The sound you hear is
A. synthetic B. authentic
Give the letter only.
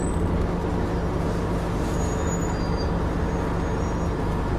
B